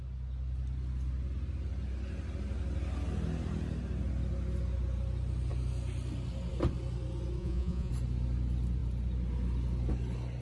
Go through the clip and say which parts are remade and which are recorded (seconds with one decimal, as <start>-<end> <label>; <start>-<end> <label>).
0.0-7.4 recorded; 7.4-7.9 remade; 7.9-10.4 recorded